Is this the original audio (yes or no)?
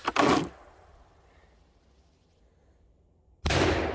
yes